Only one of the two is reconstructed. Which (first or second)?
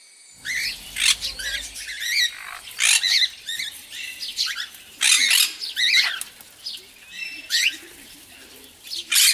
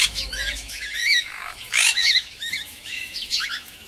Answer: second